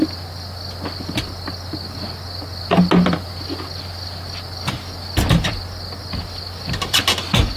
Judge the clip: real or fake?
real